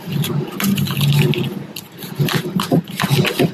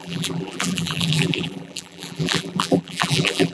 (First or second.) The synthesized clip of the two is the second